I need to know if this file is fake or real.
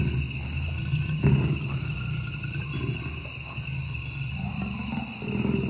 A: real